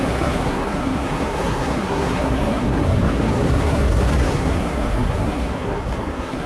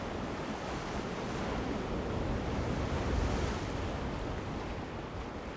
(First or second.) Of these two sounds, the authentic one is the second